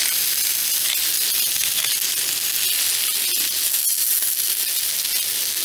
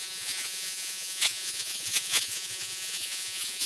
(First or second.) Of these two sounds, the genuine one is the first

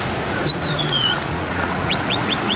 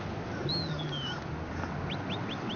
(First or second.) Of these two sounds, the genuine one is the second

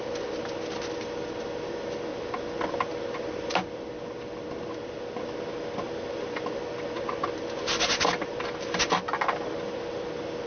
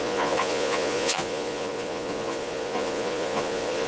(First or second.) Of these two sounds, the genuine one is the first